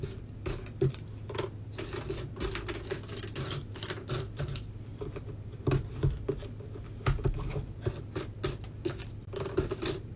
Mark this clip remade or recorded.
recorded